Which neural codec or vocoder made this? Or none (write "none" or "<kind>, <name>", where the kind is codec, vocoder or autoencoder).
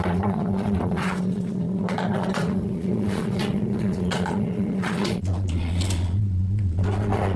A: vocoder, Vocos